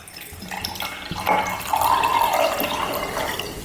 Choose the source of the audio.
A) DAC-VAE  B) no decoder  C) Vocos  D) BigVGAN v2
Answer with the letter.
B